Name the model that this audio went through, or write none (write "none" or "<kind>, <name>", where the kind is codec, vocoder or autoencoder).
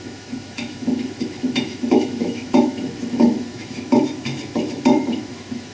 autoencoder, DAC-VAE